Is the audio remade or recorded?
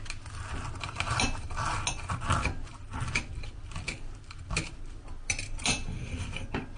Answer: recorded